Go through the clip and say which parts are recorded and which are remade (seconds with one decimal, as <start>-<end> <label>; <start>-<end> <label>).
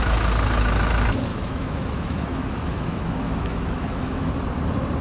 0.0-1.3 recorded; 1.3-4.3 remade; 4.3-5.0 recorded